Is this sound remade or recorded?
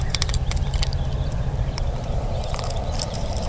remade